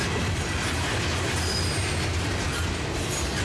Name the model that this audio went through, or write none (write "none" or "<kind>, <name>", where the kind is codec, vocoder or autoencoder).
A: none